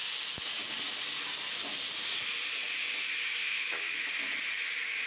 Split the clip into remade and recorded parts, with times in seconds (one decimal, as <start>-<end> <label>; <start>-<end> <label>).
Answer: 0.0-3.4 recorded; 3.4-4.1 remade; 4.1-5.1 recorded